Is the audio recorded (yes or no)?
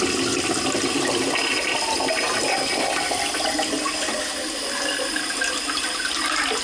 yes